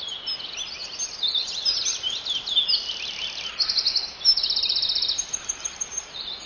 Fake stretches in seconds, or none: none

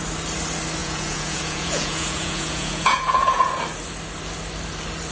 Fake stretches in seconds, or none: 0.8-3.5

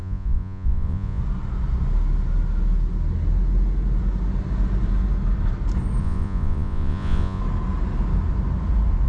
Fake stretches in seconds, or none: 0.0-1.2; 6.0-7.4